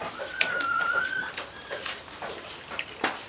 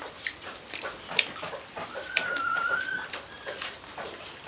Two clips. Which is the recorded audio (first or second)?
first